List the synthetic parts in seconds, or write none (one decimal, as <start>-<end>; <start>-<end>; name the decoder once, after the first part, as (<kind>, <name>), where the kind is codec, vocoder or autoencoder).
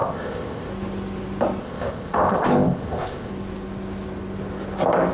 0.0-0.7 (codec, ZipCodec); 1.6-3.3